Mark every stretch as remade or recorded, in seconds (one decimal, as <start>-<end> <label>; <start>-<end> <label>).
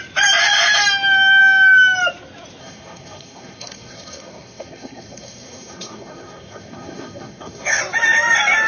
0.0-2.6 recorded; 2.6-7.8 remade; 7.8-8.7 recorded